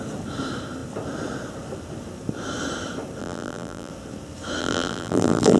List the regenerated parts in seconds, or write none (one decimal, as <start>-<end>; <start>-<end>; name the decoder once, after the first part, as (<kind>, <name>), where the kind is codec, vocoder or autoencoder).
3.2-3.9 (vocoder, BigVGAN v2); 4.6-5.6